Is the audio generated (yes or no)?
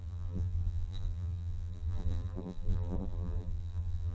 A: yes